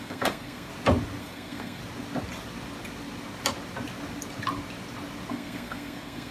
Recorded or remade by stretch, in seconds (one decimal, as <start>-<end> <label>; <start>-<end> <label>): 0.0-0.7 remade; 0.7-1.2 recorded; 1.2-1.8 remade; 1.8-5.3 recorded; 5.3-6.3 remade